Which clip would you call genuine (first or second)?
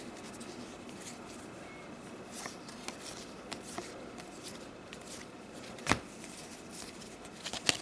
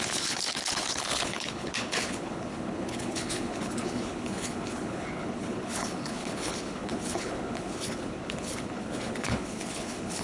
first